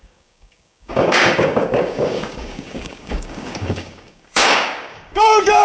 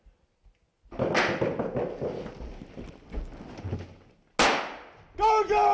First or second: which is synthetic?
first